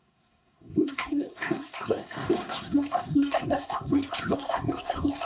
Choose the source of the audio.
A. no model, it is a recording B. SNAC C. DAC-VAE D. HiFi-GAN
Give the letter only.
B